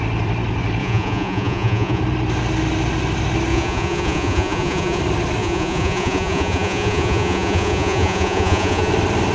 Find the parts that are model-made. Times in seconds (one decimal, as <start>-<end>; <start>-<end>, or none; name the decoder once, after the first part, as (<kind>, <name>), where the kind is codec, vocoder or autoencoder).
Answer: 0.8-2.0 (vocoder, Vocos); 3.5-5.0; 5.4-8.9